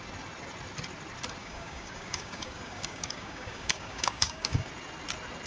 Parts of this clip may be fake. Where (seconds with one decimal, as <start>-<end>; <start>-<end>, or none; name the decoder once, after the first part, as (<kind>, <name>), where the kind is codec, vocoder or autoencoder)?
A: 1.4-4.7 (codec, DAC)